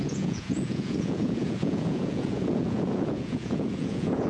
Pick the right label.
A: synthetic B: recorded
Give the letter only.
A